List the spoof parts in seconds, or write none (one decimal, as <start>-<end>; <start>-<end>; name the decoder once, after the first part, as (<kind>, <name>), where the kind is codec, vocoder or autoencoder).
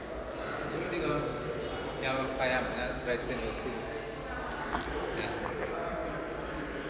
none